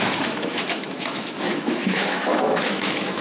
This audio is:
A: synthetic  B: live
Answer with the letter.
A